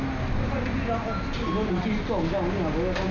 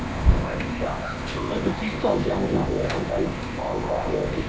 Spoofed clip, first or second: second